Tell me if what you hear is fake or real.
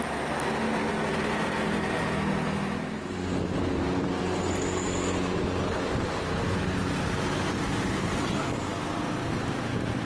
real